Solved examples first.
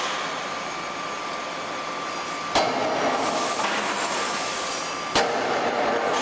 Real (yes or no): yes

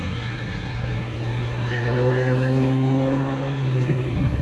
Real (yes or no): no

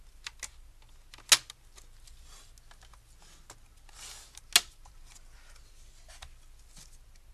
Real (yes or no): yes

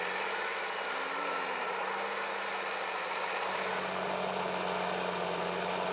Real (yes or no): yes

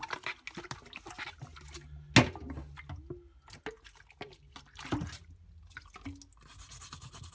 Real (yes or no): yes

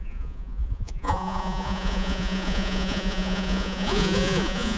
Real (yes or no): no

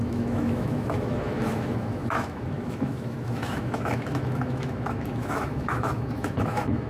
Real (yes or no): no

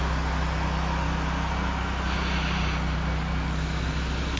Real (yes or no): yes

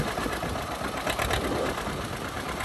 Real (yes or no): yes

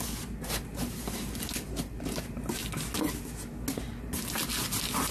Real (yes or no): yes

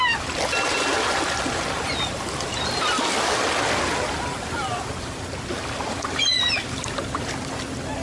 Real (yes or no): yes